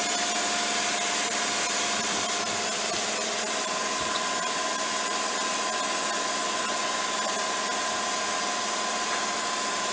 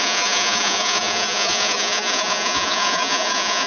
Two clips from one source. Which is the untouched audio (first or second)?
first